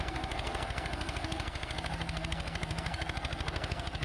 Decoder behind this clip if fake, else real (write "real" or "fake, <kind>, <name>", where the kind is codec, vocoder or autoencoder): fake, codec, SNAC